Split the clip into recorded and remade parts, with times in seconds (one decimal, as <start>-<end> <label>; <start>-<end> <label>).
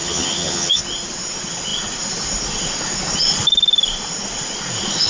0.0-0.8 remade; 0.8-5.1 recorded